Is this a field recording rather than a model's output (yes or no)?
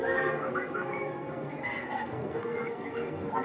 no